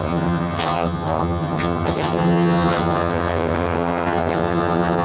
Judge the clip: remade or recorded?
remade